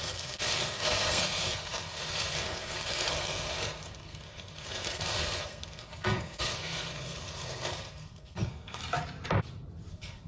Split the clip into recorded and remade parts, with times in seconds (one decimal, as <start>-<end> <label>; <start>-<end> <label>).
0.0-8.8 remade; 8.8-9.9 recorded; 9.9-10.3 remade